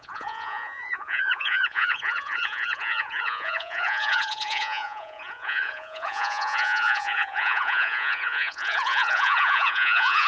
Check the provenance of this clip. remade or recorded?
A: remade